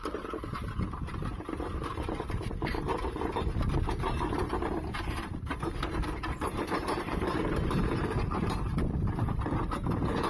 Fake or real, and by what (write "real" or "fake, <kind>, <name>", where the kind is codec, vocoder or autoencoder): fake, vocoder, BigVGAN v2